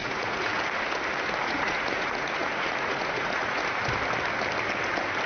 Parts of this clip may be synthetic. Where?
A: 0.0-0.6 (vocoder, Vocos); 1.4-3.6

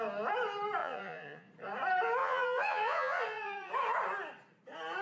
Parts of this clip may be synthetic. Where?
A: 0.8-1.5 (vocoder, Vocos); 2.2-3.7

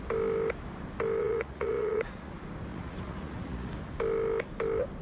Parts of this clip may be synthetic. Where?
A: 1.2-2.3 (vocoder, Vocos); 2.7-3.7

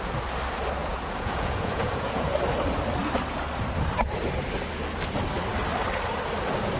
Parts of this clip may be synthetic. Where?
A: 0.8-2.3 (vocoder, Vocos)

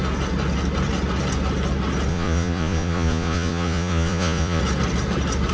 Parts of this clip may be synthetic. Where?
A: 2.1-4.6 (vocoder, Vocos)

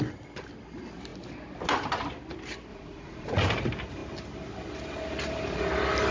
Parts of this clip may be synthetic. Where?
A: 2.7-3.4 (vocoder, Vocos)

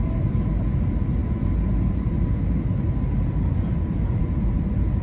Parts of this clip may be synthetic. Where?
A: none

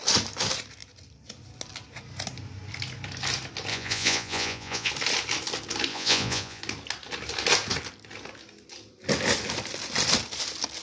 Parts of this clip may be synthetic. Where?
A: 3.7-4.9 (vocoder, Vocos); 5.9-6.6